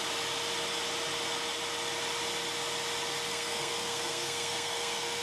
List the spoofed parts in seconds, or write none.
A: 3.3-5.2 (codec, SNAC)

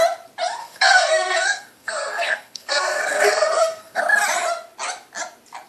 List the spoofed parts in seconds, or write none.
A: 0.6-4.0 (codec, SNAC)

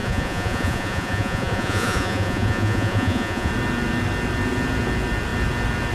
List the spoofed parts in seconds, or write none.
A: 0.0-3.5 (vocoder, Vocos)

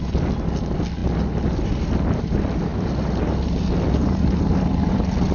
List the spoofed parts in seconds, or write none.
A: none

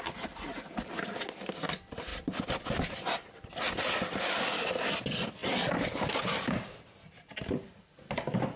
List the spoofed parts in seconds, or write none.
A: none

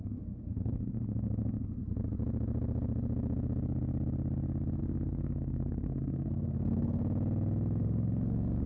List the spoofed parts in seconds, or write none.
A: 0.0-1.8 (codec, SNAC); 4.8-7.0; 7.8-8.7

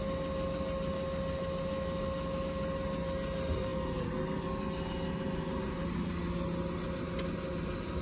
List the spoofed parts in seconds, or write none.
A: none

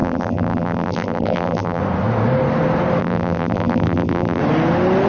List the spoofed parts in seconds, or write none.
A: 0.0-1.8 (vocoder, BigVGAN v2); 3.0-4.4